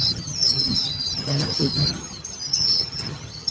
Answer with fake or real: fake